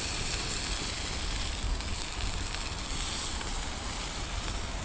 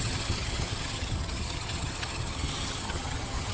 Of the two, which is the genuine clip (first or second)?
first